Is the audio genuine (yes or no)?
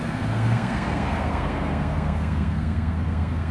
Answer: no